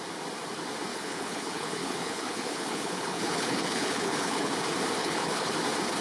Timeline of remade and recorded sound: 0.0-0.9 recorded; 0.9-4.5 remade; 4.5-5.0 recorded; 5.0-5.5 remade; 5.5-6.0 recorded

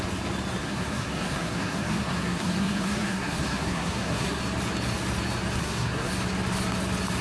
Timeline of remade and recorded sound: 0.0-0.6 recorded; 0.6-4.4 remade; 4.4-5.6 recorded; 5.6-6.1 remade; 6.1-7.2 recorded

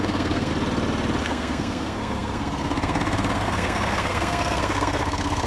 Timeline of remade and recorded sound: 0.0-0.5 remade; 0.5-1.2 recorded; 1.2-5.5 remade

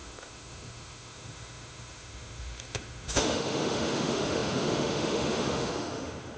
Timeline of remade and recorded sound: 0.0-6.4 remade

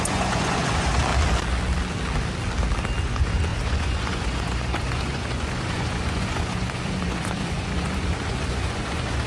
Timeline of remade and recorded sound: 0.0-1.1 remade; 1.1-3.0 recorded; 3.0-9.3 remade

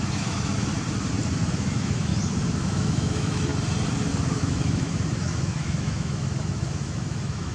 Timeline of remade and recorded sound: 0.0-0.7 remade; 0.7-1.5 recorded; 1.5-2.1 remade; 2.1-2.6 recorded; 2.6-3.5 remade; 3.5-4.4 recorded; 4.4-7.5 remade